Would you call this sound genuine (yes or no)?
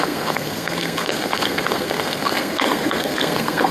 no